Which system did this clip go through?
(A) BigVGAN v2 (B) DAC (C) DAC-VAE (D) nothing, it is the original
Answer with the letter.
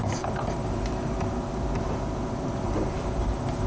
D